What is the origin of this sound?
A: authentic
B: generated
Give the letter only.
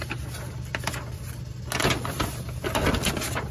A